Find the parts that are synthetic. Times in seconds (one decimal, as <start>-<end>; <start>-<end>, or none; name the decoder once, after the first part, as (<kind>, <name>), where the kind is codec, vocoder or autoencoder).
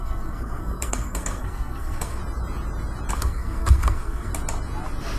0.0-2.2 (codec, SNAC); 3.1-4.3